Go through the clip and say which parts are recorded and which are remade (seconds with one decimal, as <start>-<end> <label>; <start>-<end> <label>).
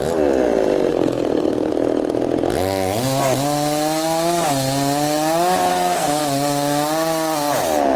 0.0-0.9 recorded; 0.9-1.7 remade; 1.7-5.7 recorded; 5.7-6.2 remade; 6.2-8.0 recorded